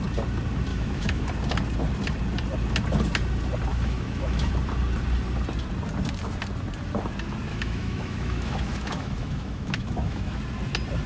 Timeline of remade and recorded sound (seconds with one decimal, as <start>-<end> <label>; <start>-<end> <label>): 0.0-0.7 recorded; 0.7-1.3 remade; 1.3-3.7 recorded; 3.7-4.5 remade; 4.5-7.5 recorded; 7.5-10.4 remade; 10.4-11.1 recorded